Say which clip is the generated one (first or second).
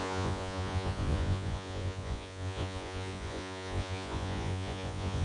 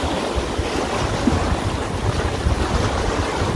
first